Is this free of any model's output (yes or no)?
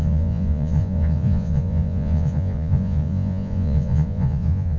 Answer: no